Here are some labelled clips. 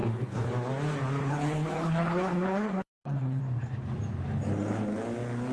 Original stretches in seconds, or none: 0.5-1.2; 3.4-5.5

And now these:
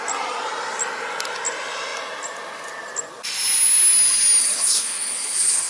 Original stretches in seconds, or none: 0.0-4.4

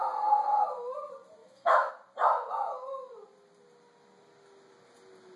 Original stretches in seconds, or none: 0.0-1.4; 1.9-5.4

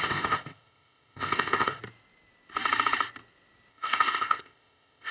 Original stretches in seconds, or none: 1.8-3.7

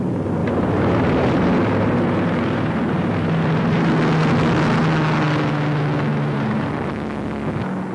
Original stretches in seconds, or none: 0.0-0.4; 3.9-6.1; 6.7-7.9